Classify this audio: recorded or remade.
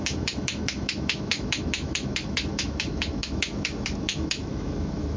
remade